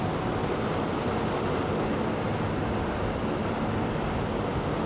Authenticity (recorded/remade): recorded